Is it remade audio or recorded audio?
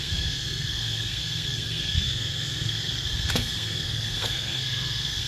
remade